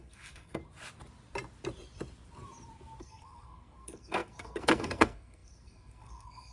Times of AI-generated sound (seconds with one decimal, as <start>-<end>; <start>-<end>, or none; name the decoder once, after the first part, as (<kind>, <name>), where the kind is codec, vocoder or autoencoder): 0.0-0.6 (codec, SNAC); 3.0-6.5